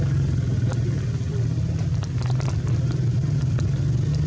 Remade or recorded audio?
recorded